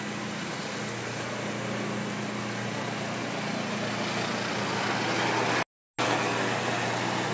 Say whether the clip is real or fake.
real